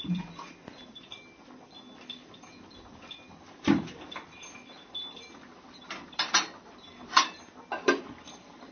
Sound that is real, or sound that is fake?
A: real